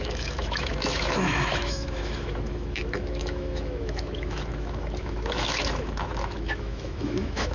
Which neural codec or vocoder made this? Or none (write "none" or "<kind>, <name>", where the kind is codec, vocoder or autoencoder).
autoencoder, DAC-VAE